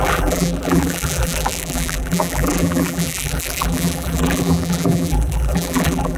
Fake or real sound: fake